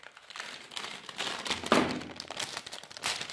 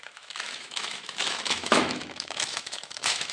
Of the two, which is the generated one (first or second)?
second